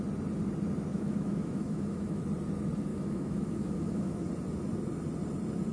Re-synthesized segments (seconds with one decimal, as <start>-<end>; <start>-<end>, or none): 0.9-2.2; 2.9-4.3